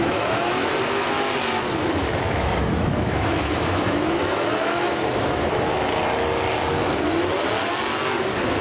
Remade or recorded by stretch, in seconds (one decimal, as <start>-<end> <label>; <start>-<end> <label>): 0.0-0.7 remade; 0.7-2.0 recorded; 2.0-5.7 remade; 5.7-8.6 recorded